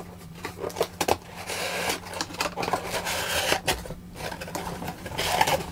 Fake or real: real